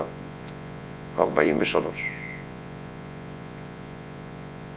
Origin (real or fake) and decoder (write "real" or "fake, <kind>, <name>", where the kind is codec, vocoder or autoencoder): fake, vocoder, Vocos